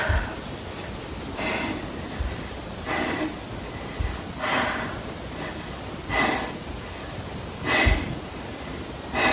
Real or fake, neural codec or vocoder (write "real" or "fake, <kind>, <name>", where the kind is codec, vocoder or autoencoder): real